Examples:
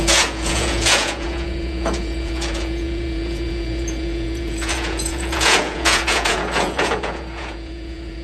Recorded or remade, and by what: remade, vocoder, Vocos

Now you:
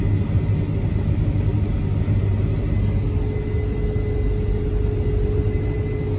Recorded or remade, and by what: recorded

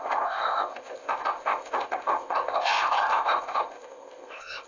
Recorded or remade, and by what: remade, codec, ZipCodec